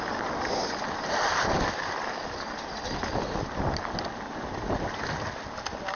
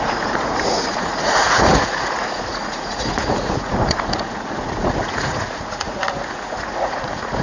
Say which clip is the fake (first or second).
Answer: second